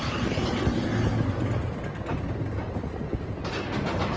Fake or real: real